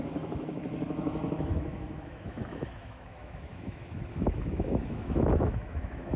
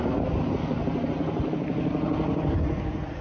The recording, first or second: second